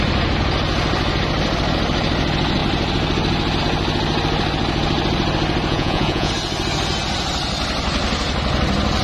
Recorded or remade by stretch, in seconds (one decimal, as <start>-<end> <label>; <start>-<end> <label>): 0.0-5.7 recorded; 5.7-6.3 remade; 6.3-9.0 recorded